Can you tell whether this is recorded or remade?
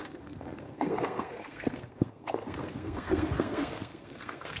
remade